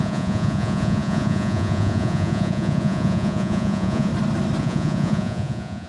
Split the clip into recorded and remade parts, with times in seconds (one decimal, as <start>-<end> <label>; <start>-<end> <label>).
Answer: 0.0-4.1 remade; 4.1-4.6 recorded; 4.6-5.9 remade